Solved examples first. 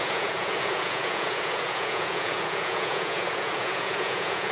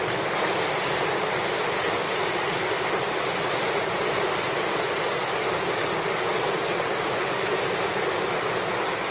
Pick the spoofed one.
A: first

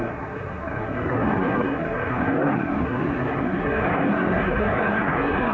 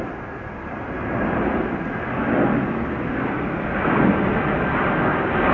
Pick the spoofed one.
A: first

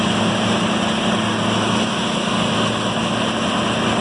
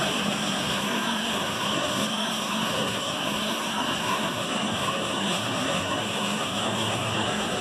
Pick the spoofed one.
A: second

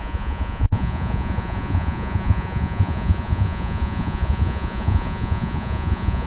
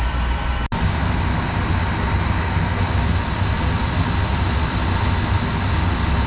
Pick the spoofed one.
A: first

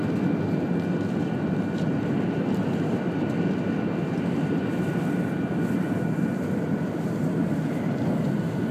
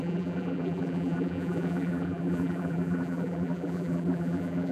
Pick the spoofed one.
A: second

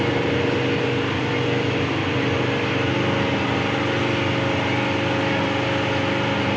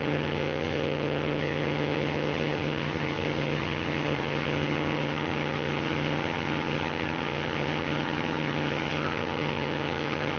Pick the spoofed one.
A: second